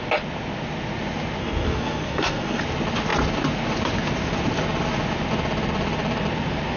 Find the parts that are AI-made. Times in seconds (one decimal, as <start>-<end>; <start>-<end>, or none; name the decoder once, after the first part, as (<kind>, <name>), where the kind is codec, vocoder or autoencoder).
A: 1.4-2.6 (codec, SNAC)